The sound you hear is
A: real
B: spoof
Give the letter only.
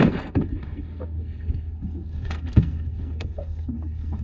B